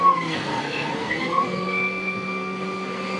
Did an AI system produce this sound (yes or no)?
yes